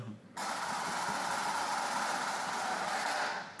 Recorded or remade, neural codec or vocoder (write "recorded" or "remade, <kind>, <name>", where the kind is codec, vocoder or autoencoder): recorded